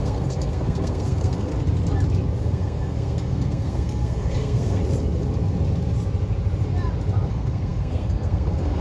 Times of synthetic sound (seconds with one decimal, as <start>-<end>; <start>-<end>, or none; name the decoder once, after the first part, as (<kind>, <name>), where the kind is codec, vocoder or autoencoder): 0.0-1.5 (codec, SNAC); 2.4-4.8; 7.3-8.8